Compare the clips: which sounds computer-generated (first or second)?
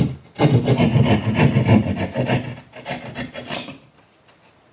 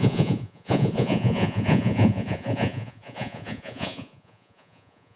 second